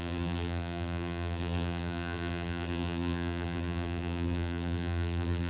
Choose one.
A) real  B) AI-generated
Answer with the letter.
B